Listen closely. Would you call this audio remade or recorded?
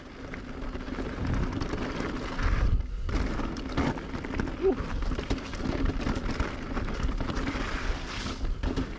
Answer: recorded